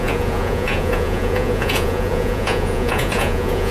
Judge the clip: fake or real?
fake